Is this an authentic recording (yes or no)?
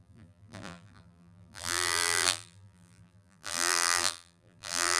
no